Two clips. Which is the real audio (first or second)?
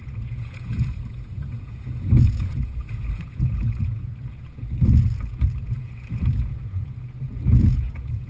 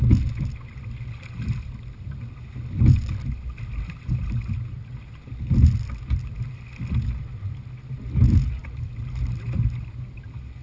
second